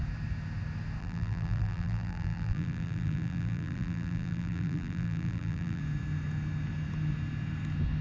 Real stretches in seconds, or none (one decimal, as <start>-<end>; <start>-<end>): 0.0-1.0; 5.8-8.0